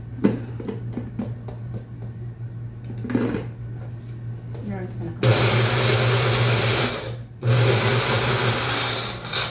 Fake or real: real